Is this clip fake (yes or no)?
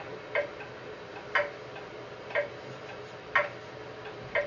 no